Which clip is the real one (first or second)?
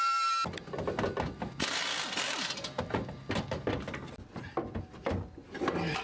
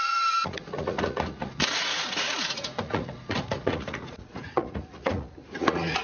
first